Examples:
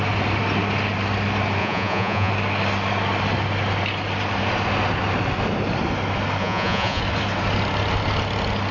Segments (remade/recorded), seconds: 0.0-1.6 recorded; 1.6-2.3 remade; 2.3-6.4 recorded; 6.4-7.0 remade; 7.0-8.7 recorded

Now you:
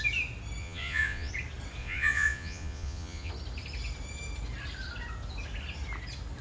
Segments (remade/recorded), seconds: 0.0-0.6 recorded; 0.6-1.3 remade; 1.3-1.8 recorded; 1.8-3.3 remade; 3.3-6.4 recorded

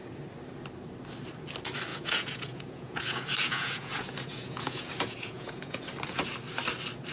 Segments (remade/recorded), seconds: 0.0-1.9 recorded; 1.9-5.8 remade; 5.8-7.1 recorded

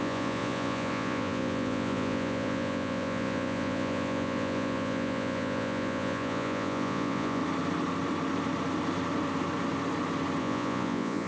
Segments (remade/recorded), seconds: 0.0-7.4 remade; 7.4-10.4 recorded; 10.4-11.3 remade

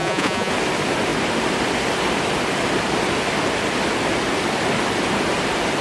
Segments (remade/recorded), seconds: 0.0-0.5 remade; 0.5-5.8 recorded